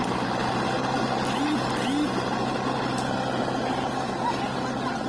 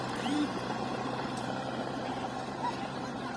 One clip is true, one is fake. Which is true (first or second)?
first